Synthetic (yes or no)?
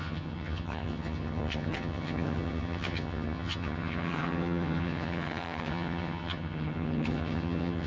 yes